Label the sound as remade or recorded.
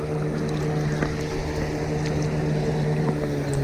recorded